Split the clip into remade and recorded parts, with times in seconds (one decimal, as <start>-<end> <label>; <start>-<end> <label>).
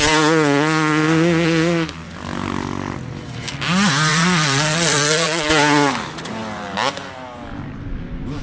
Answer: 0.0-4.1 recorded; 4.1-5.5 remade; 5.5-8.4 recorded